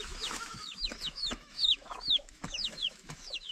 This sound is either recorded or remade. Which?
remade